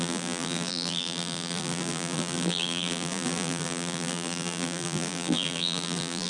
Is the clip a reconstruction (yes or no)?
yes